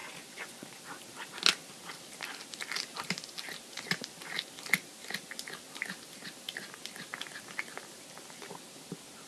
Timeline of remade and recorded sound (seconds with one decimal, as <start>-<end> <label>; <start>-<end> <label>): 0.0-0.8 remade; 0.8-9.3 recorded